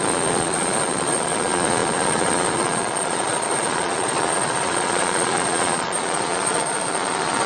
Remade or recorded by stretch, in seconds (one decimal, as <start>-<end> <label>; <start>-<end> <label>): 0.0-7.5 remade